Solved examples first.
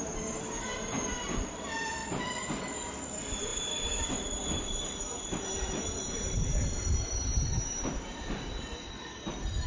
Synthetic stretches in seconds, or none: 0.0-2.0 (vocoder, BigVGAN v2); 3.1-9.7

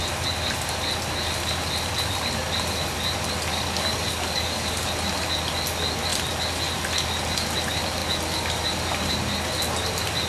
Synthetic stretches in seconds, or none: 3.5-4.9 (codec, DAC)

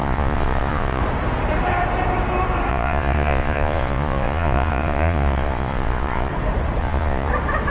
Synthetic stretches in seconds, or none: 0.0-1.0 (vocoder, Vocos); 2.7-6.3; 6.8-7.3

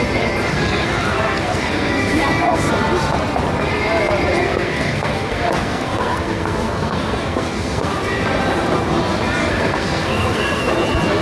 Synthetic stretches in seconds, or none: 0.5-2.7 (codec, SNAC); 4.4-8.0; 9.4-10.7

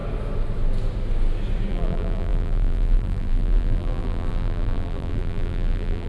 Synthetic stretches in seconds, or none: 1.7-6.1 (vocoder, BigVGAN v2)

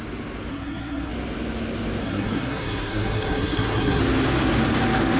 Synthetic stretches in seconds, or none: 0.5-1.1 (codec, SNAC); 2.0-4.0

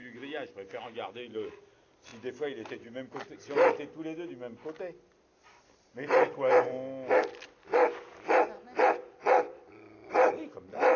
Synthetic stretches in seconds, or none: none